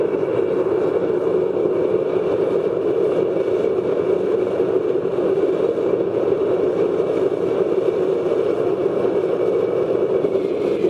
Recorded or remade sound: recorded